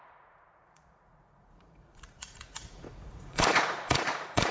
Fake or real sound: fake